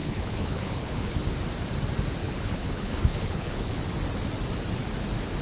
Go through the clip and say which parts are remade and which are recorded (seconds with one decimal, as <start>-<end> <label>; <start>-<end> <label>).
0.0-1.2 remade; 1.2-2.2 recorded; 2.2-3.8 remade; 3.8-5.4 recorded